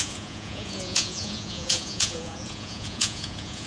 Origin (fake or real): fake